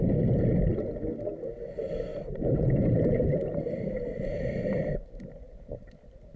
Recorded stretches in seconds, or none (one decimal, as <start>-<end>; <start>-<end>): 0.0-2.1; 5.9-6.4